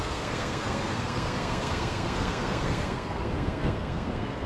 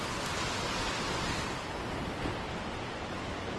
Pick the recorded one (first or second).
second